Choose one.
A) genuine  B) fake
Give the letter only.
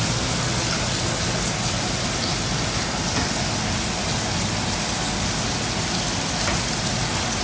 A